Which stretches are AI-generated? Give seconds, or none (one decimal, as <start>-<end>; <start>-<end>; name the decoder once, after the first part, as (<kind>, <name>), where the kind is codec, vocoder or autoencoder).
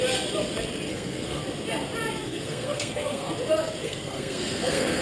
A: 0.9-1.4 (codec, SNAC); 2.2-3.3; 3.8-5.0